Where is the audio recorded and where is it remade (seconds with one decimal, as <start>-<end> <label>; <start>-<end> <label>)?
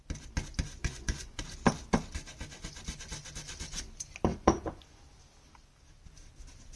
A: 0.0-0.8 recorded; 0.8-1.4 remade; 1.4-4.3 recorded; 4.3-5.0 remade; 5.0-6.8 recorded